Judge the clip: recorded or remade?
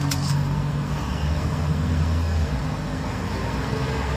remade